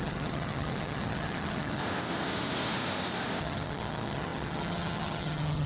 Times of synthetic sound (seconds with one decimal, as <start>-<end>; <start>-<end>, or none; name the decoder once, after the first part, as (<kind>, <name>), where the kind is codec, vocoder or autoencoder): 0.0-1.8 (vocoder, HiFi-GAN); 3.4-5.7